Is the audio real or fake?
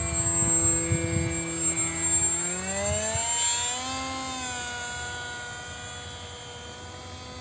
real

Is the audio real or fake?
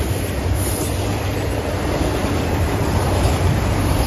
real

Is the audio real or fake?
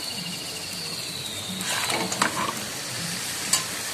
real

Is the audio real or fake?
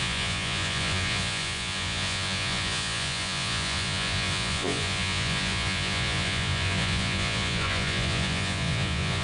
fake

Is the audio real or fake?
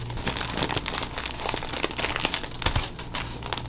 real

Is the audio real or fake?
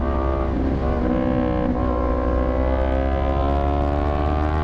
real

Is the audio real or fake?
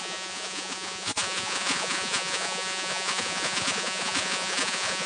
fake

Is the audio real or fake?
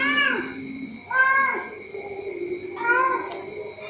real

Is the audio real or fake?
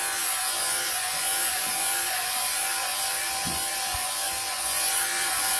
fake